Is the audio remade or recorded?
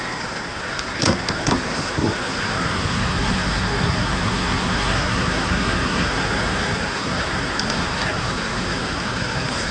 remade